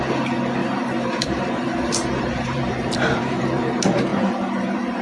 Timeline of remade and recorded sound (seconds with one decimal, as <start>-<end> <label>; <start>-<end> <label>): 0.0-0.6 recorded; 0.6-3.6 remade; 3.6-4.1 recorded; 4.1-5.0 remade